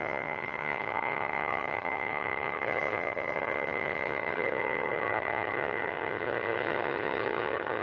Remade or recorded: remade